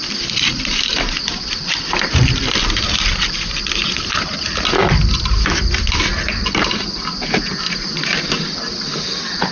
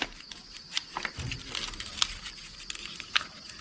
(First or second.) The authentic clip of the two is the second